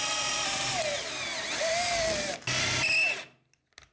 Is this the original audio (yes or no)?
yes